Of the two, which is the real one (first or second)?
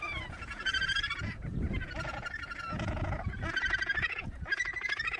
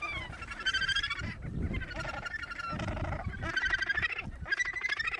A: second